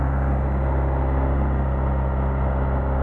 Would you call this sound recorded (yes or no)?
yes